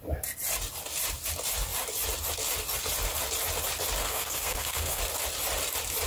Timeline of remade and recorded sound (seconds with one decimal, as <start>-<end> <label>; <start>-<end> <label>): 0.0-4.0 recorded; 4.0-5.0 remade; 5.0-6.1 recorded